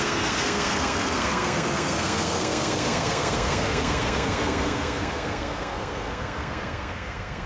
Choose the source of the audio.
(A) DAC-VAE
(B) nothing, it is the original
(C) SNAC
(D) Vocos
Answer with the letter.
C